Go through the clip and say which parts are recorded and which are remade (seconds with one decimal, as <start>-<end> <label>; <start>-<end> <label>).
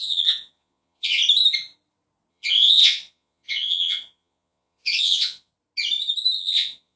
0.0-1.2 remade; 1.2-2.3 recorded; 2.3-5.5 remade; 5.5-6.4 recorded; 6.4-7.0 remade